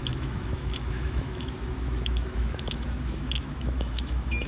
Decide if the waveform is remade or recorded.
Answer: remade